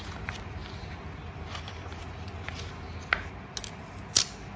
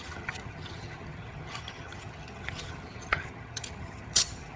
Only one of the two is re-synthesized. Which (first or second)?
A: second